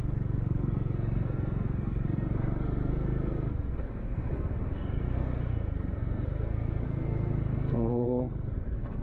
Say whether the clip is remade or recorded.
remade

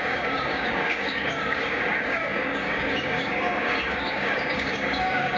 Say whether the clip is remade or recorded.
remade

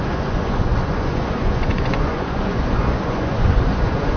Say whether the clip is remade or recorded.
remade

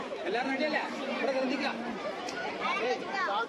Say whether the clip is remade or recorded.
remade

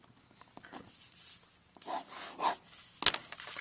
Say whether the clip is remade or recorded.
recorded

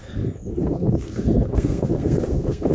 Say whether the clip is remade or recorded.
remade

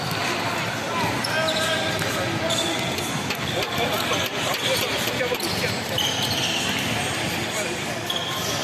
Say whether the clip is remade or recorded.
recorded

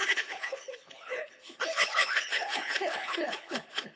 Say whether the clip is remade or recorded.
remade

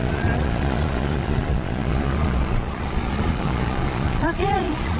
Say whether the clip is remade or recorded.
remade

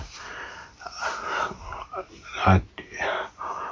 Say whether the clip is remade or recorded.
recorded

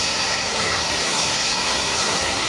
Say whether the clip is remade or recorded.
remade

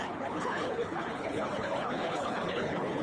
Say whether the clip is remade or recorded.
remade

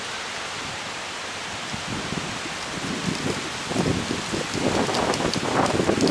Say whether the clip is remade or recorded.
recorded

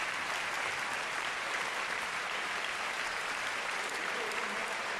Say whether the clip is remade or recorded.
remade